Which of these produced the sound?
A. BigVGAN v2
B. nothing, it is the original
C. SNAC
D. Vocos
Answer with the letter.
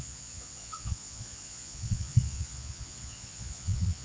D